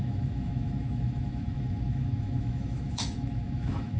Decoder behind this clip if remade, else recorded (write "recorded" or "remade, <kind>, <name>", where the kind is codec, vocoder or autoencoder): remade, autoencoder, DAC-VAE